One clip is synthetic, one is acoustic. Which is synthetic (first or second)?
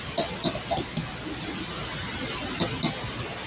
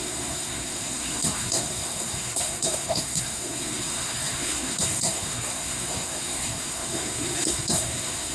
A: second